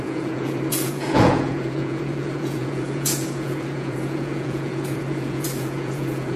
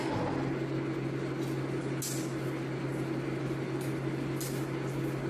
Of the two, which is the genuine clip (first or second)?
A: second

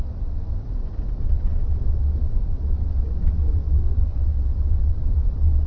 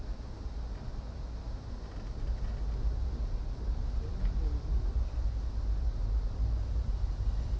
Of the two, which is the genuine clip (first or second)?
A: second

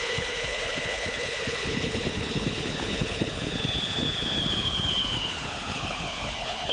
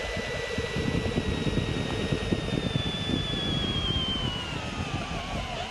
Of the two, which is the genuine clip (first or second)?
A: second